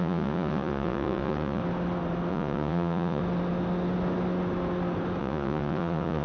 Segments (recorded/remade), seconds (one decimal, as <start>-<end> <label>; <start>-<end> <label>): 0.0-1.6 remade; 1.6-2.3 recorded; 2.3-3.2 remade; 3.2-5.2 recorded; 5.2-6.2 remade